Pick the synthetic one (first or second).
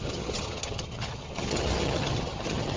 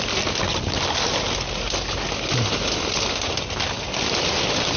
first